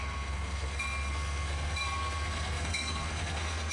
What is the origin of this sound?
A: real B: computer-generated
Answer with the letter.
B